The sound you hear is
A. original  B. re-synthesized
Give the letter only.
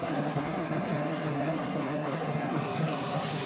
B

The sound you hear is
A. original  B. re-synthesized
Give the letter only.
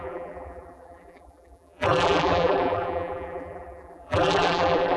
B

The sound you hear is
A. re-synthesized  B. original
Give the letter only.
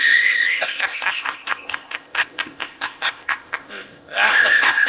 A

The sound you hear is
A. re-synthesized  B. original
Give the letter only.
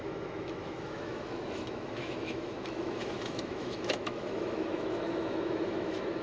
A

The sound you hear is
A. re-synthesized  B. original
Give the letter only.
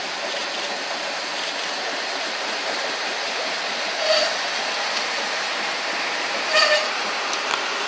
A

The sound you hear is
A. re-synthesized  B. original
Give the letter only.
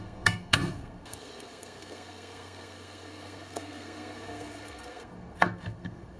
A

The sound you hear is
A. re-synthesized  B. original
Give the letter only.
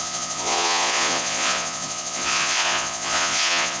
A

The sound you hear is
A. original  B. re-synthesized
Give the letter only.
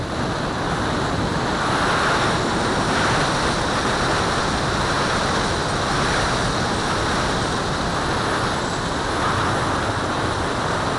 A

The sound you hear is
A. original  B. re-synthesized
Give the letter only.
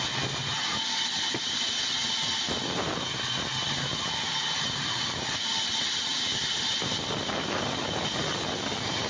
A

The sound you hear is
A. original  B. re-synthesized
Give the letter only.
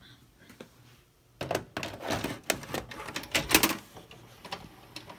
A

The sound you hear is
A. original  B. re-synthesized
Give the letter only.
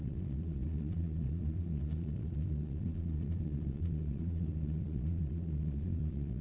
B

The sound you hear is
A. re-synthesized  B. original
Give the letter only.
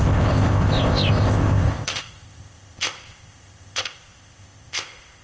A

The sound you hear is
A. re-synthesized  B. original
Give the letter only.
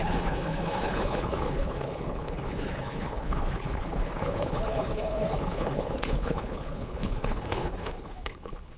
A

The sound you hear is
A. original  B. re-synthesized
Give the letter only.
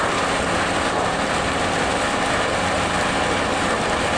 A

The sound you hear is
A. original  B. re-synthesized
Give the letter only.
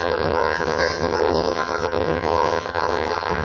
B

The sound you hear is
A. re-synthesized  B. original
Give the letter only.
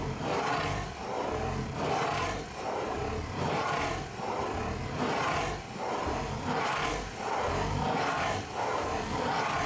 B